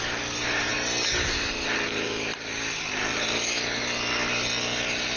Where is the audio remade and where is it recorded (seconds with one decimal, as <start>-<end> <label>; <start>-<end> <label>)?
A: 0.0-5.2 recorded